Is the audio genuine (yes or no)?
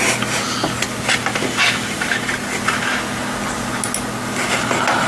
yes